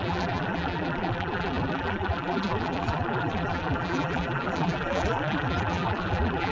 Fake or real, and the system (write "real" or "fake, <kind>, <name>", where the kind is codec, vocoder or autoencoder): fake, vocoder, BigVGAN v2